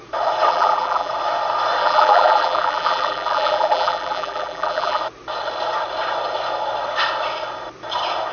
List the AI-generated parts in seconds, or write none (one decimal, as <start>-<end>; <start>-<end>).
0.5-1.1; 1.8-5.0